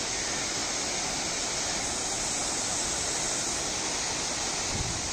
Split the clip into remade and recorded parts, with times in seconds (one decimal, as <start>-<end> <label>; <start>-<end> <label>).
0.0-5.1 recorded